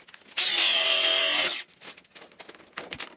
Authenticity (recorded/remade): recorded